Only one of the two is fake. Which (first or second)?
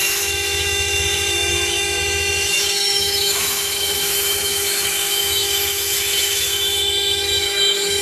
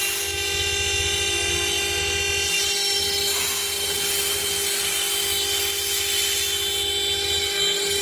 first